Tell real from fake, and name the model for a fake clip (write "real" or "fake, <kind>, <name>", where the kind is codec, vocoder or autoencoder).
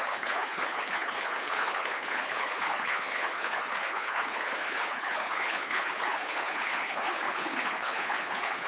fake, codec, HILCodec